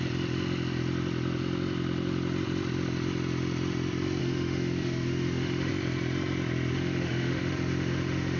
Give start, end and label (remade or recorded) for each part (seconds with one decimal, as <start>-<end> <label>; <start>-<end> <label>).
0.0-4.2 recorded; 4.2-5.7 remade; 5.7-6.7 recorded; 6.7-8.4 remade